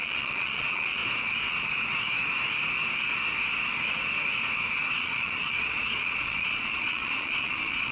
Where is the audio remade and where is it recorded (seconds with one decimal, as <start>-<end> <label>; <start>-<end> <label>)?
0.0-1.0 remade; 1.0-4.9 recorded; 4.9-7.9 remade